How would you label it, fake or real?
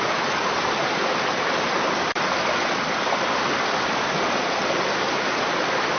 real